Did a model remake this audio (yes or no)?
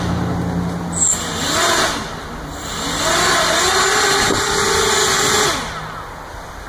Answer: no